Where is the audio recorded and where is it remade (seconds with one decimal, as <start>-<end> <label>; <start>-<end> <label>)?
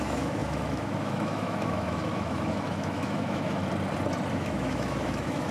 0.0-3.6 remade; 3.6-4.3 recorded; 4.3-5.5 remade